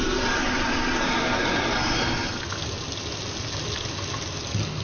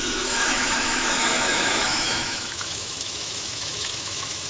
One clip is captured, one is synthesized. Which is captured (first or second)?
first